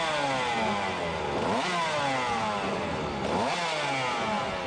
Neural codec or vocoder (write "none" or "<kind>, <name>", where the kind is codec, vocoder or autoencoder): none